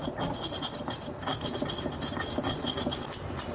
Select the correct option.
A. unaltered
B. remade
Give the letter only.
A